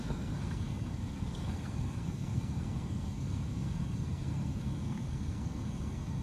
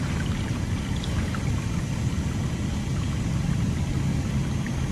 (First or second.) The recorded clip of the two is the second